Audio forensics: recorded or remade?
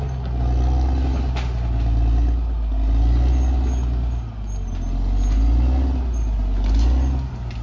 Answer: recorded